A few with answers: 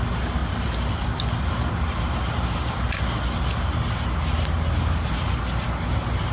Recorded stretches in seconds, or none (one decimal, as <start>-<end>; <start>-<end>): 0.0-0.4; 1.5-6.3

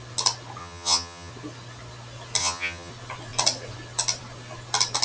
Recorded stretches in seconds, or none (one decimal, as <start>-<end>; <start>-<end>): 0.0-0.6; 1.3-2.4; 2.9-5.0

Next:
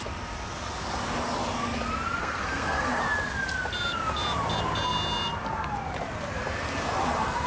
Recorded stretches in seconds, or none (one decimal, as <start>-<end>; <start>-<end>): 0.0-2.2; 3.0-7.5

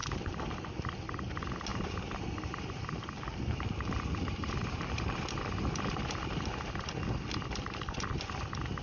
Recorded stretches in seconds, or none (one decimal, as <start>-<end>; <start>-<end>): 0.7-1.7; 6.7-8.8